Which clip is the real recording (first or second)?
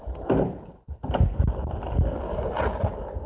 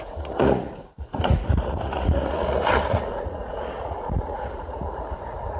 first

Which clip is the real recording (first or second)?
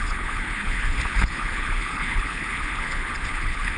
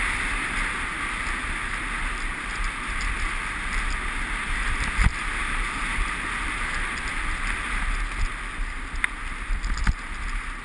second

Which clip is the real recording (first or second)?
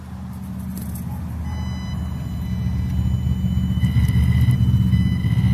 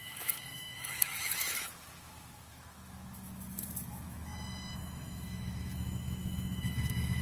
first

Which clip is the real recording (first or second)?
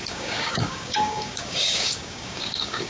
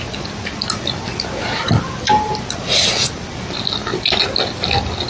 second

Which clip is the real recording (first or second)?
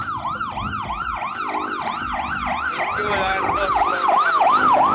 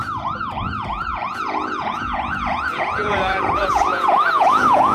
first